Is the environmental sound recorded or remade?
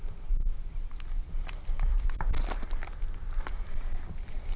recorded